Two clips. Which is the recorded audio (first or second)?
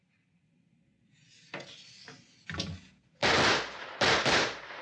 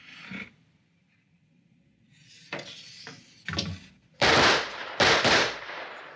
first